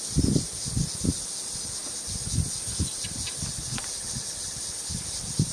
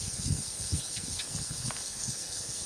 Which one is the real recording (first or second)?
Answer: first